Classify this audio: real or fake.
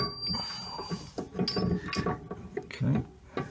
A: real